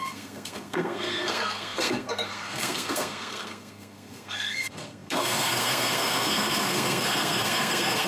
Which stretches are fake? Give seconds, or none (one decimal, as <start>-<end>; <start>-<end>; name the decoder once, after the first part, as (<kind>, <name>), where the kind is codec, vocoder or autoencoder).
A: 0.0-8.1 (codec, SNAC)